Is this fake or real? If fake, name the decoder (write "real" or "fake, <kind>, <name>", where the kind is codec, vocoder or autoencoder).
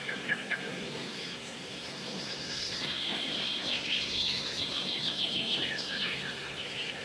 fake, codec, SNAC